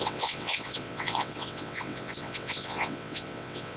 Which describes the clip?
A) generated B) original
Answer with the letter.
A